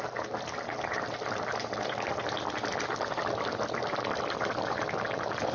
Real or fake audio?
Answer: real